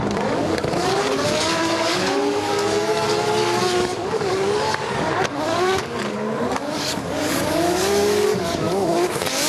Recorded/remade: remade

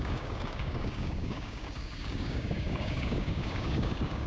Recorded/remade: remade